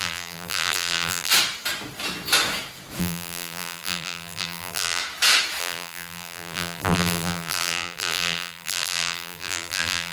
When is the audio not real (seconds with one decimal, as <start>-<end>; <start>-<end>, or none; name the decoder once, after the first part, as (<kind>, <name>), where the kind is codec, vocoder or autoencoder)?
0.0-1.3 (vocoder, BigVGAN v2); 3.0-5.0; 5.6-10.1